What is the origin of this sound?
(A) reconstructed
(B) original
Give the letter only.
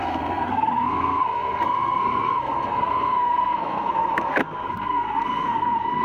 A